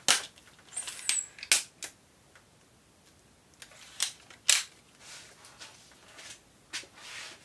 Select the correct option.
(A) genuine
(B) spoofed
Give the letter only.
A